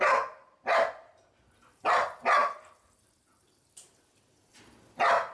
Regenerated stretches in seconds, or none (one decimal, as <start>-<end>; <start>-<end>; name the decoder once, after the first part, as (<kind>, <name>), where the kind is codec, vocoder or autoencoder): none